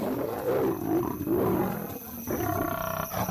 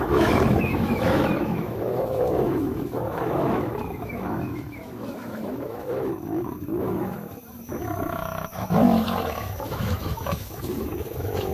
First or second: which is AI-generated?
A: second